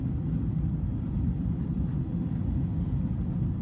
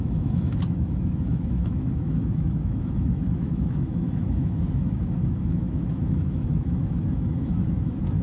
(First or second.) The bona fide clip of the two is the first